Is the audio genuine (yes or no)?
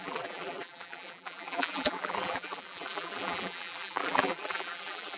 no